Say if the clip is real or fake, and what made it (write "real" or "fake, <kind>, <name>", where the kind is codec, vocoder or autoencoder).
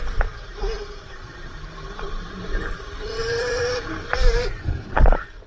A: fake, vocoder, BigVGAN v2